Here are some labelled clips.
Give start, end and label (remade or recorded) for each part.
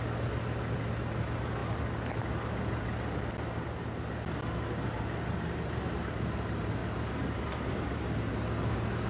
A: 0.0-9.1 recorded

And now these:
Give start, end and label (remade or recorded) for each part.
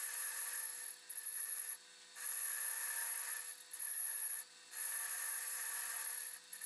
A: 0.0-0.7 remade; 0.7-4.7 recorded; 4.7-6.7 remade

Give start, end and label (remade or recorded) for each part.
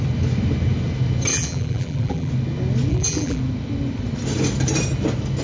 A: 0.0-1.3 recorded; 1.3-2.3 remade; 2.3-2.9 recorded; 2.9-3.4 remade; 3.4-5.4 recorded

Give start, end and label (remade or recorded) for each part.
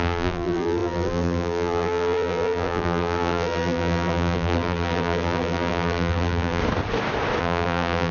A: 0.0-6.6 remade; 6.6-7.4 recorded; 7.4-8.1 remade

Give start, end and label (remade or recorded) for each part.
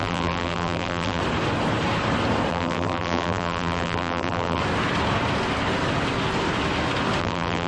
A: 0.0-1.2 remade; 1.2-2.5 recorded; 2.5-4.6 remade; 4.6-7.2 recorded; 7.2-7.7 remade